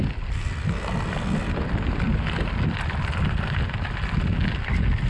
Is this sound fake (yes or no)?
no